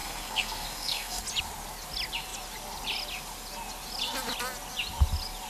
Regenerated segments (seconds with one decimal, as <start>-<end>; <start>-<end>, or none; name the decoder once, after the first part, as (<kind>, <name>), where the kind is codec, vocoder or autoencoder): 0.0-1.2 (codec, SNAC)